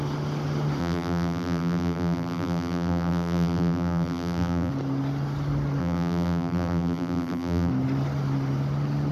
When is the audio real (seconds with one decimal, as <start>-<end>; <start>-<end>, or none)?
0.0-0.8; 4.7-5.8; 7.7-9.1